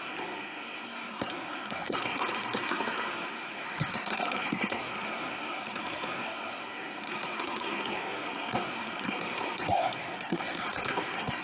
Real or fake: fake